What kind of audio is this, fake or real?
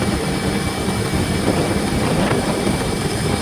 fake